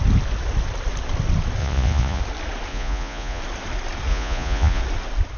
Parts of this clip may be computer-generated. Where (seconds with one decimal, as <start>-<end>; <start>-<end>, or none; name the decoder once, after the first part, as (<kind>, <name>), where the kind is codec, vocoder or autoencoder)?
1.6-2.2 (vocoder, Vocos); 2.7-3.4; 4.1-4.8